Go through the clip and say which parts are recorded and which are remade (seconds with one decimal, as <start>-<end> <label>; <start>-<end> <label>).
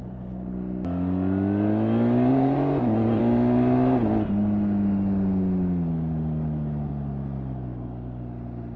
0.0-2.3 recorded; 2.3-3.2 remade; 3.2-8.8 recorded